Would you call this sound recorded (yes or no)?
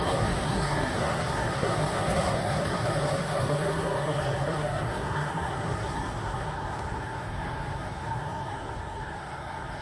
no